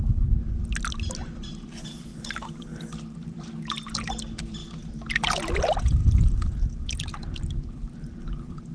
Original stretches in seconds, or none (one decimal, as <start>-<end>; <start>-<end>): 2.7-4.1; 4.6-5.5